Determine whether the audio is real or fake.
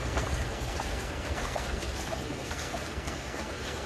fake